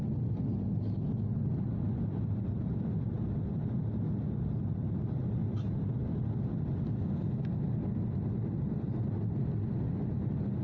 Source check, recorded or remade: recorded